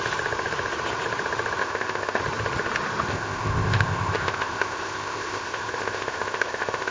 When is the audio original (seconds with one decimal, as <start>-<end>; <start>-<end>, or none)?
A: 0.0-1.6; 2.2-3.1